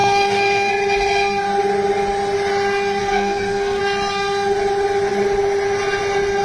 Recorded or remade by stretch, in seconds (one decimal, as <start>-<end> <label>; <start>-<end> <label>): 0.0-0.7 remade; 0.7-3.0 recorded; 3.0-3.8 remade; 3.8-6.4 recorded